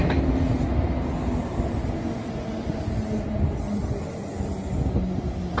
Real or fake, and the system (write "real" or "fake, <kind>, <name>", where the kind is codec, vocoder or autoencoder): real